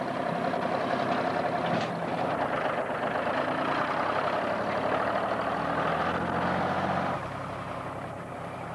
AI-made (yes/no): no